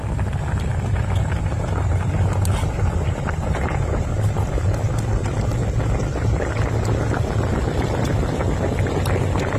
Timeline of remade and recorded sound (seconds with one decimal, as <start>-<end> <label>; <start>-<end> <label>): 0.0-0.7 recorded; 0.7-4.1 remade; 4.1-9.6 recorded